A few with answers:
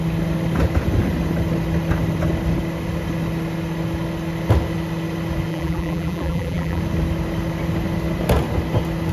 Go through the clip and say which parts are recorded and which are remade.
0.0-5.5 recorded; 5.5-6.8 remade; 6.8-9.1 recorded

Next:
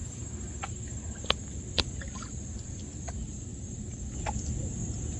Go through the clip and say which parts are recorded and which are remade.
0.0-3.1 recorded; 3.1-3.5 remade; 3.5-5.2 recorded

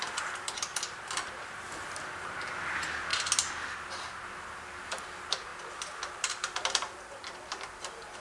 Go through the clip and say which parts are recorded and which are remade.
0.0-3.1 remade; 3.1-4.4 recorded; 4.4-5.5 remade; 5.5-6.1 recorded; 6.1-8.2 remade

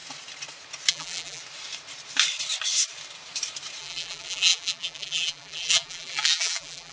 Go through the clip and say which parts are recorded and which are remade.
0.0-0.9 recorded; 0.9-1.4 remade; 1.4-3.8 recorded; 3.8-6.9 remade

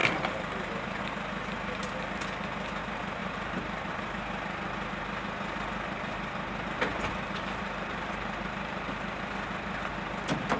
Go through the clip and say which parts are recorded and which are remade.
0.0-1.0 remade; 1.0-3.2 recorded; 3.2-3.9 remade; 3.9-6.9 recorded; 6.9-9.2 remade; 9.2-10.6 recorded

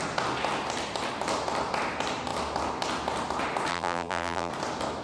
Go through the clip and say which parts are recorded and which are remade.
0.0-3.7 recorded; 3.7-4.5 remade; 4.5-5.0 recorded

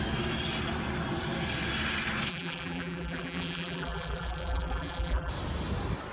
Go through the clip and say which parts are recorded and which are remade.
0.0-2.3 recorded; 2.3-5.3 remade; 5.3-6.1 recorded

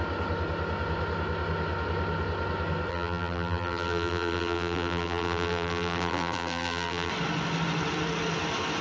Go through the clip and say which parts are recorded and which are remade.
0.0-2.9 recorded; 2.9-7.1 remade; 7.1-8.8 recorded